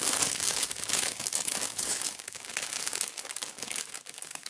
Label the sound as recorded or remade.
remade